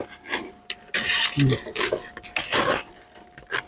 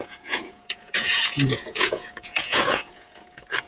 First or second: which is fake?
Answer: second